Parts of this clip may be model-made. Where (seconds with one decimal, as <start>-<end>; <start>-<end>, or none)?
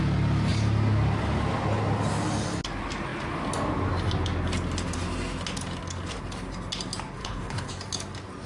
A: 7.2-7.7